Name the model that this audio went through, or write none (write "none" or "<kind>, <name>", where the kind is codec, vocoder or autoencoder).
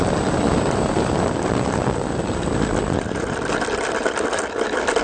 none